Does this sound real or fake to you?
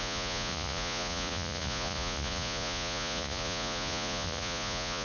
fake